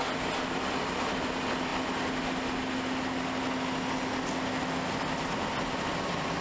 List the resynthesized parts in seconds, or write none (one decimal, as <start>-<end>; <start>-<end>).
none